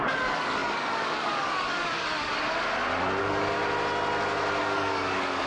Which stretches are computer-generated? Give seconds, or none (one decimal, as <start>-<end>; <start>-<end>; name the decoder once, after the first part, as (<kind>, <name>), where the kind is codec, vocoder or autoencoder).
0.0-2.3 (codec, DAC); 3.2-3.6; 4.6-5.5